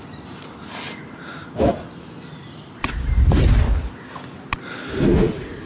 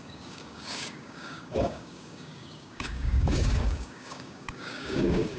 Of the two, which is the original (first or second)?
first